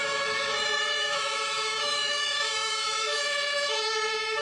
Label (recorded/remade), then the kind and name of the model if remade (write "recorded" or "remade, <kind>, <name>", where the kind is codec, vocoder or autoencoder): remade, autoencoder, DAC-VAE